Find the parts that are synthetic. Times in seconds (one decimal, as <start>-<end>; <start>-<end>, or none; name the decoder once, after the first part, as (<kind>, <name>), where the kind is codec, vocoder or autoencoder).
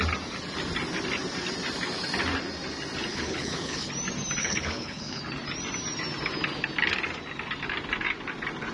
3.1-3.9 (codec, HILCodec); 4.4-5.2